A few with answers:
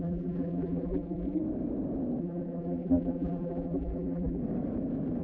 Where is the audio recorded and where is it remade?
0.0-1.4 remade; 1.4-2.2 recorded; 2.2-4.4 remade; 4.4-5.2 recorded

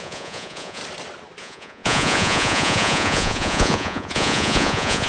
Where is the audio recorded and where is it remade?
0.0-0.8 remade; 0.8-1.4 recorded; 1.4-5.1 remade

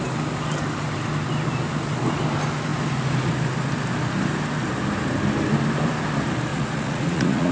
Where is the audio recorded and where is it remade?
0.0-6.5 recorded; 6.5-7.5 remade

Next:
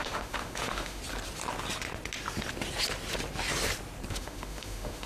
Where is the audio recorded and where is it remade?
0.0-1.0 remade; 1.0-4.1 recorded; 4.1-5.1 remade